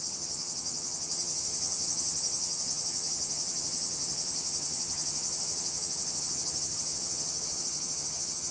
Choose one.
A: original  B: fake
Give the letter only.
B